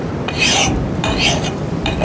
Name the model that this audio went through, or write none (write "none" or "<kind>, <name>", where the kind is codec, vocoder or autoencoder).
vocoder, BigVGAN v2